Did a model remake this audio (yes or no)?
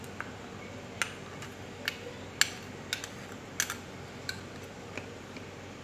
no